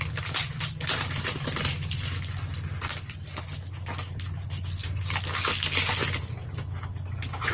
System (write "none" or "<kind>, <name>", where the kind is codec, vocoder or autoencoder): none